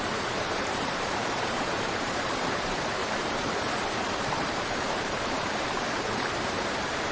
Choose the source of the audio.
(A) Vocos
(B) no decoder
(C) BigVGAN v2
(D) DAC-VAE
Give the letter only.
C